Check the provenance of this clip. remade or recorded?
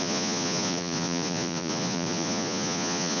remade